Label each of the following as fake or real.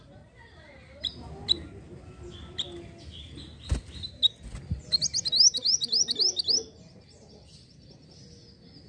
real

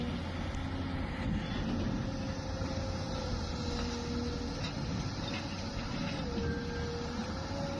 real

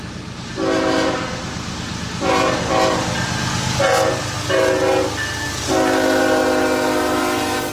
real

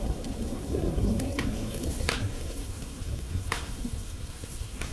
fake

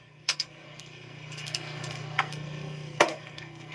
fake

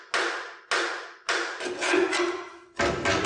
real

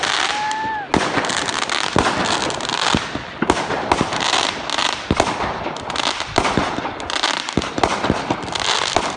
real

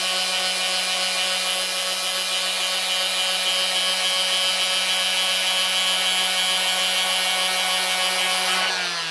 real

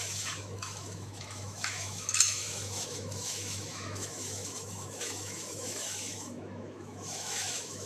fake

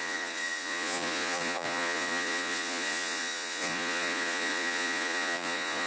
fake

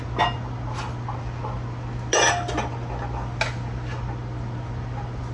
real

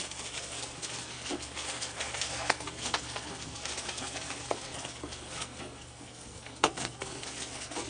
fake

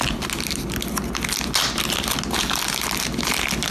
real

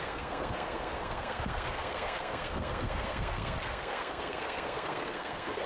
fake